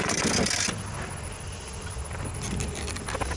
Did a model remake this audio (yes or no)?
no